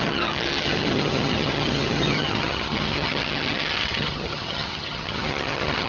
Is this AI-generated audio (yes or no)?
yes